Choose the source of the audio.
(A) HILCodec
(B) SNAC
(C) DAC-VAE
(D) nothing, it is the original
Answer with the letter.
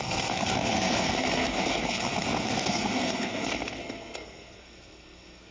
B